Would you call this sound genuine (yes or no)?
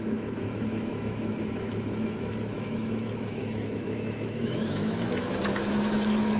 no